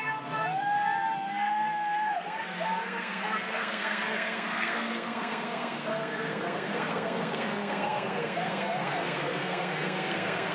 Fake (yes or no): yes